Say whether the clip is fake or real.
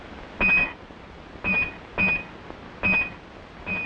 real